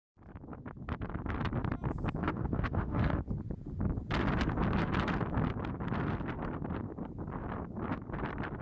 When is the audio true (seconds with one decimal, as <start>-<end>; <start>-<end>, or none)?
0.0-2.2; 3.2-8.6